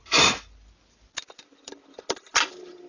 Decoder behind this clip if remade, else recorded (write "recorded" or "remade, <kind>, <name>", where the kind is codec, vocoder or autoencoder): recorded